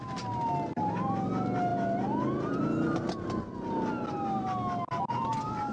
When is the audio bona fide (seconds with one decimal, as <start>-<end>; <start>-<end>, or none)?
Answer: 0.0-5.7